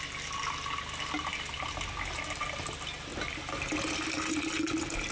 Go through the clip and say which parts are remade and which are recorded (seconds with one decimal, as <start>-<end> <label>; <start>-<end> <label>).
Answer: 0.0-5.1 recorded